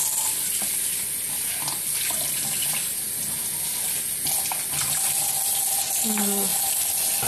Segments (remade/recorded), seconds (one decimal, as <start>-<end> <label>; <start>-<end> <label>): 0.0-7.3 recorded